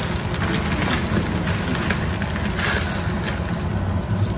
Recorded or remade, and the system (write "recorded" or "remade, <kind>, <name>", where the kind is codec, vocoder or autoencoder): recorded